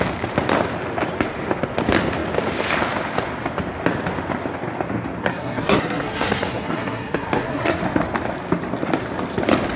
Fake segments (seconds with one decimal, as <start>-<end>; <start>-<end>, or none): 5.2-7.8